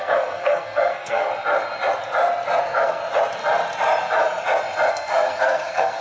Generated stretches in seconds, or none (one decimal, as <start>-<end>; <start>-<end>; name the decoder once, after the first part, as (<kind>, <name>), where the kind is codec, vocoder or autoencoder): 0.0-1.3 (codec, SNAC); 2.6-3.0; 4.9-6.0